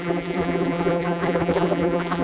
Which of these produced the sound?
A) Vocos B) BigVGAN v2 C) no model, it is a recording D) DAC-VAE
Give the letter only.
B